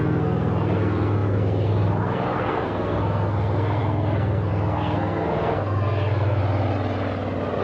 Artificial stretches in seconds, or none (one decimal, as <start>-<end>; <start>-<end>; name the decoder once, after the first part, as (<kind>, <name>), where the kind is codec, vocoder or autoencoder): 0.0-6.4 (codec, SNAC)

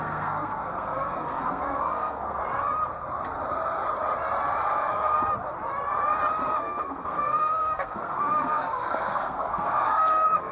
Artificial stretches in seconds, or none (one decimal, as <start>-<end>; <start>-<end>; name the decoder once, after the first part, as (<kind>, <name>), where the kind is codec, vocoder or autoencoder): 0.0-2.4 (codec, SNAC); 4.7-5.2; 6.6-10.5